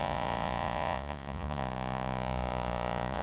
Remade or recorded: remade